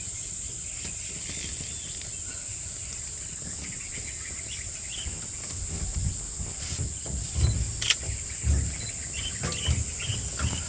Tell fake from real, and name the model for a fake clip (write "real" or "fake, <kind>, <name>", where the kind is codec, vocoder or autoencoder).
real